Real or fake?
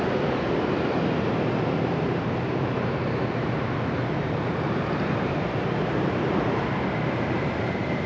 fake